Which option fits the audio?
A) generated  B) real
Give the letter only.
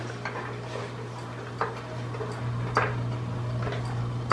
B